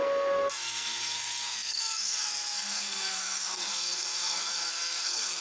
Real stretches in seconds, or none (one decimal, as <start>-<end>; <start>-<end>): none